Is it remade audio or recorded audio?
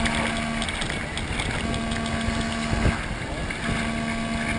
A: recorded